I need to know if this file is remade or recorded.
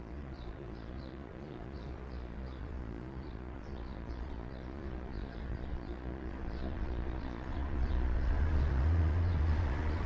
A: remade